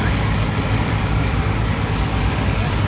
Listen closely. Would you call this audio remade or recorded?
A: remade